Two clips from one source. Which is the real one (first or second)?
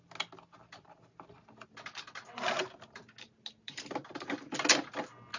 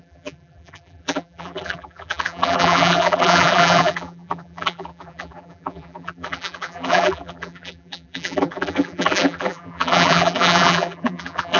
first